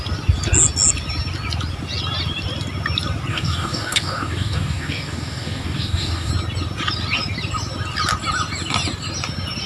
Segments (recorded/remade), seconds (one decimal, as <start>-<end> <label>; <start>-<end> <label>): 0.0-3.3 recorded; 3.3-6.3 remade; 6.3-9.7 recorded